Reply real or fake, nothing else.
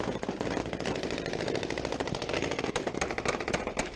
real